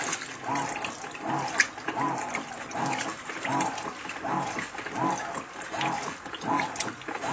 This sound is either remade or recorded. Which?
recorded